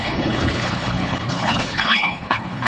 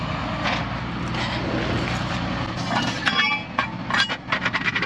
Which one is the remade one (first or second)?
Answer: first